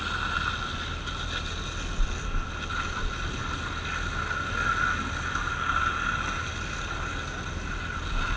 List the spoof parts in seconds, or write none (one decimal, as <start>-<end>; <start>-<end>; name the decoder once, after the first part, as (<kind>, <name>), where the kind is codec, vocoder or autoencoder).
none